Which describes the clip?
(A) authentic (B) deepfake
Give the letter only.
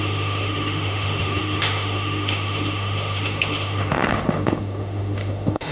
B